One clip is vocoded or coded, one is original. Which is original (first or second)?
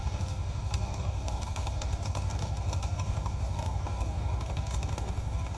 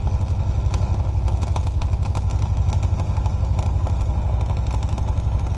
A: second